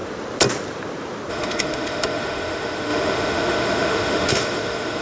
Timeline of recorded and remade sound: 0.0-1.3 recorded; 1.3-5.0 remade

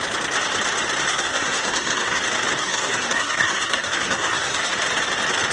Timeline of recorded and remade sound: 0.0-1.1 recorded; 1.1-2.2 remade; 2.2-2.6 recorded; 2.6-4.7 remade; 4.7-5.5 recorded

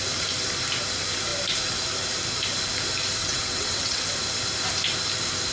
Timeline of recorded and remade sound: 0.0-3.2 recorded; 3.2-4.0 remade; 4.0-5.5 recorded

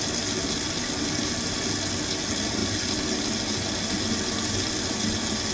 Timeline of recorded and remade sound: 0.0-5.5 recorded

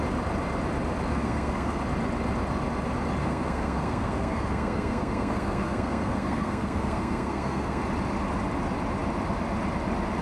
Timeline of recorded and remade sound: 0.0-1.1 recorded; 1.1-1.8 remade; 1.8-3.2 recorded; 3.2-7.8 remade; 7.8-10.2 recorded